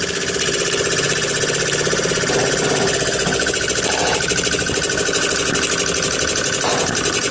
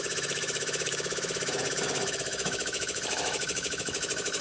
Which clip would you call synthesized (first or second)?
second